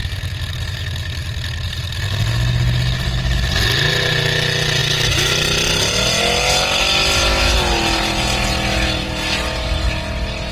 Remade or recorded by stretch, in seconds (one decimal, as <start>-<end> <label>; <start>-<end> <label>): 0.0-10.5 recorded